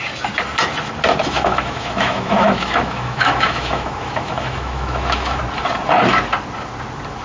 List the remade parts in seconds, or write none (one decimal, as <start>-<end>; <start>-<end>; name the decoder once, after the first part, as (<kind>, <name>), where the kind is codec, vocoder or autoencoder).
1.2-5.4 (autoencoder, DAC-VAE)